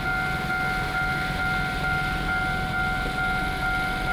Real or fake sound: real